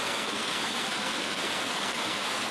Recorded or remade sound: remade